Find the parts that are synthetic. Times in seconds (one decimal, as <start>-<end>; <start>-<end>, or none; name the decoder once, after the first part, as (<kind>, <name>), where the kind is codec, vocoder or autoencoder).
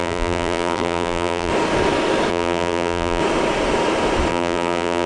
0.0-1.5 (vocoder, BigVGAN v2); 2.3-3.2; 4.3-5.1